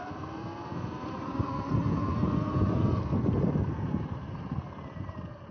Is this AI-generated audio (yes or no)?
no